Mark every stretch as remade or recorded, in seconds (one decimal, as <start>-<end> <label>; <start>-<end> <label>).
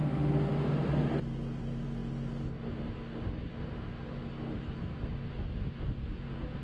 0.0-6.6 recorded